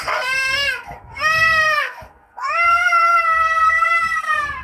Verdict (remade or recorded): remade